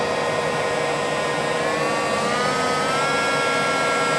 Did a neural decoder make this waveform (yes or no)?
no